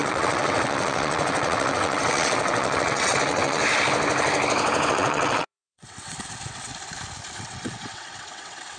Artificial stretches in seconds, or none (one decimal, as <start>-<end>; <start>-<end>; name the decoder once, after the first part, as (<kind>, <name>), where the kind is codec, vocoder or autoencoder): 0.0-3.6 (vocoder, WaveNeXt); 4.9-6.7; 7.4-8.8